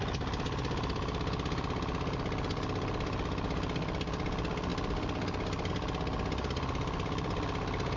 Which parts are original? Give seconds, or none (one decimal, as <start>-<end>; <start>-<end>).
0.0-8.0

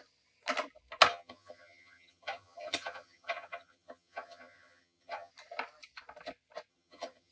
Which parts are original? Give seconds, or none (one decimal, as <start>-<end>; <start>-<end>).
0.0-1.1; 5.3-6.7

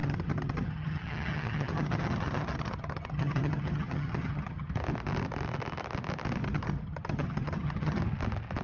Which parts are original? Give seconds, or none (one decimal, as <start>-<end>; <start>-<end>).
4.7-6.4; 8.0-8.6

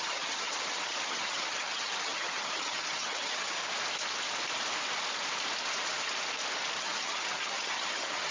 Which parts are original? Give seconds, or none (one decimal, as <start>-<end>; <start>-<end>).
3.6-6.8